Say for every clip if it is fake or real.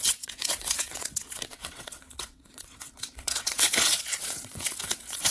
fake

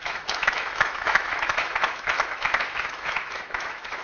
fake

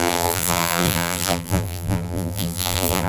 fake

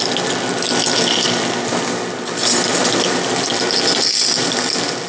real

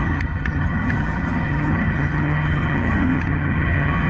fake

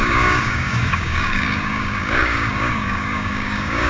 fake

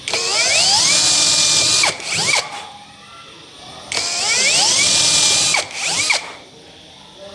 real